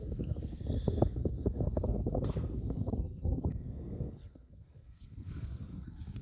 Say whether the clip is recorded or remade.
remade